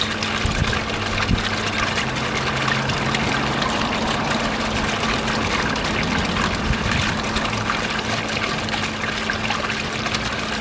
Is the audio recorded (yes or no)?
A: yes